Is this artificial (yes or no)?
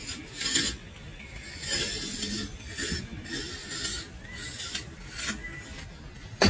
no